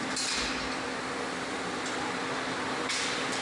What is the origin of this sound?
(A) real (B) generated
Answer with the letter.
A